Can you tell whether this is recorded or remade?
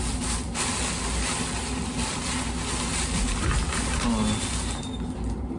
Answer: recorded